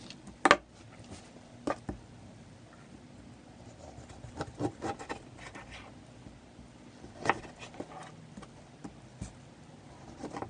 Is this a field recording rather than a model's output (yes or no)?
yes